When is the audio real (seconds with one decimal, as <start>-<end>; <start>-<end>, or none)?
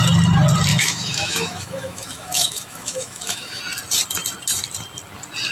0.0-0.7; 3.6-5.5